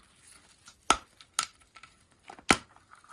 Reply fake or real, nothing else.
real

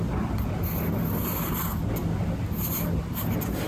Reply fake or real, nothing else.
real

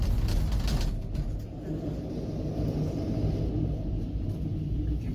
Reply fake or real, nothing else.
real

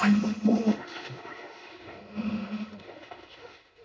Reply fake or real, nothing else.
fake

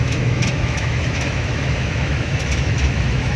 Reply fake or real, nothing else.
fake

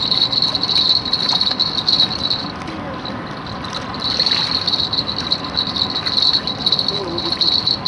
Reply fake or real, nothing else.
real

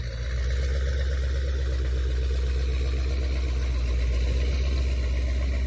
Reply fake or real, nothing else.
real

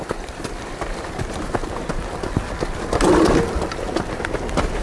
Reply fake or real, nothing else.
real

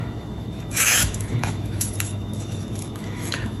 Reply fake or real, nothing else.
fake